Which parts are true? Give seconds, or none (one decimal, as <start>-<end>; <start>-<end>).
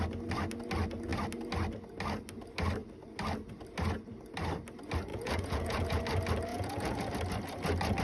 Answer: 0.0-5.1; 6.0-6.5; 7.1-8.0